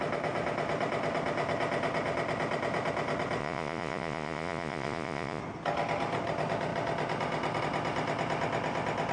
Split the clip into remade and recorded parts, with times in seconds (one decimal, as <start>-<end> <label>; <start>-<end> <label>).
0.0-3.4 recorded; 3.4-5.4 remade; 5.4-9.1 recorded